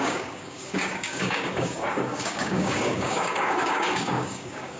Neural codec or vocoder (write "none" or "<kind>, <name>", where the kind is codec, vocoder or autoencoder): codec, DAC